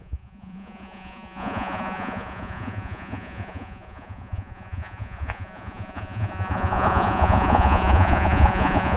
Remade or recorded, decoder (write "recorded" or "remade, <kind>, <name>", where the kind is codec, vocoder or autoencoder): remade, vocoder, Vocos